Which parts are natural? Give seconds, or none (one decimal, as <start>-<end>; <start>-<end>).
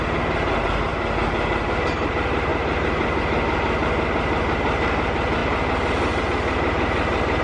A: 0.0-2.5; 3.2-7.4